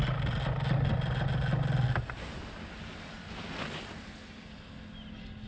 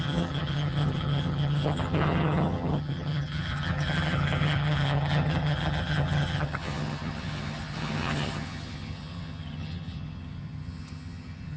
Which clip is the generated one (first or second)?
second